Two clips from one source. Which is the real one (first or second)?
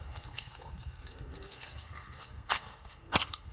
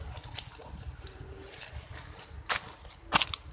second